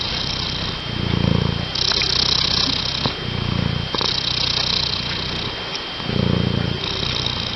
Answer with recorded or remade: recorded